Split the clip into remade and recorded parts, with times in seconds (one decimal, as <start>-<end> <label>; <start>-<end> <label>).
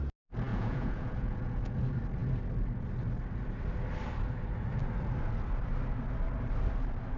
0.0-0.5 recorded; 0.5-1.7 remade; 1.7-7.2 recorded